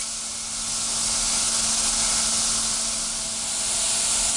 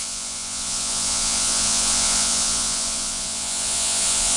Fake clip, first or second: second